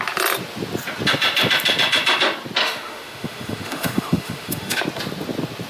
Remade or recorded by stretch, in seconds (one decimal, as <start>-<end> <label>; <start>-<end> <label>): 0.0-2.6 recorded; 2.6-4.8 remade; 4.8-5.7 recorded